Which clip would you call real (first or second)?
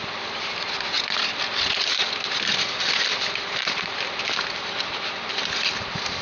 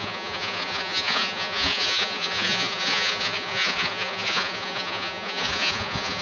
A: first